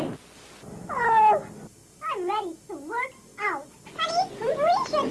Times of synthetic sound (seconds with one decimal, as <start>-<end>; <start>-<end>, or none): none